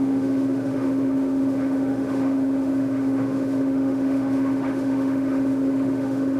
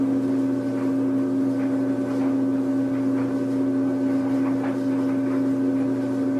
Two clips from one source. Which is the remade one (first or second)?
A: first